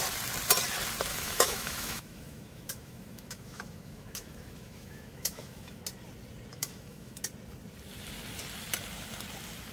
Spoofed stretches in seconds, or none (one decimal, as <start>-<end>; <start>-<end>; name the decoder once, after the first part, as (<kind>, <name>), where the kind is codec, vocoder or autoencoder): 1.1-5.8 (autoencoder, DAC-VAE); 6.5-7.2

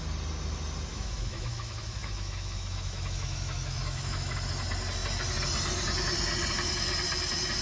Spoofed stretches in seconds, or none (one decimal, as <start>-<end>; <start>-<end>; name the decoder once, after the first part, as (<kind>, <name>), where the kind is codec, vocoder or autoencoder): 0.9-4.3 (autoencoder, DAC-VAE)

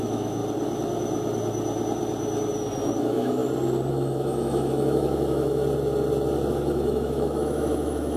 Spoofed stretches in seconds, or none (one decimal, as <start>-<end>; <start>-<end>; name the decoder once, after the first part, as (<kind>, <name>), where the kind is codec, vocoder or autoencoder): 0.0-0.4 (autoencoder, DAC-VAE); 3.0-3.4; 3.9-5.6; 6.5-8.2